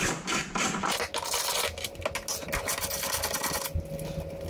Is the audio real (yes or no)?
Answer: yes